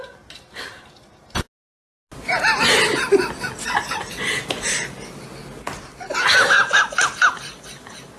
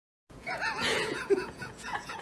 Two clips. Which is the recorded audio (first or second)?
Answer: first